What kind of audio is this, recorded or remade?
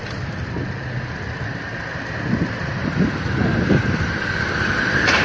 recorded